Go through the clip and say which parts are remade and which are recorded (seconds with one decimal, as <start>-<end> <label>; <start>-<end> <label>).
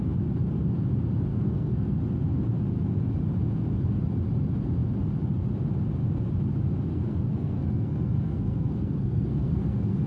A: 0.0-1.3 recorded; 1.3-2.0 remade; 2.0-6.9 recorded; 6.9-10.1 remade